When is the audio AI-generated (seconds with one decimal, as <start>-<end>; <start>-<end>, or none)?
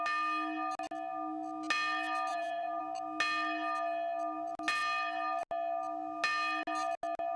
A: 2.3-2.8